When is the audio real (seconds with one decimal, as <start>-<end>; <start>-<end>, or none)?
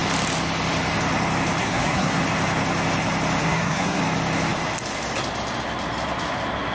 0.0-1.6; 2.2-3.4; 4.0-6.7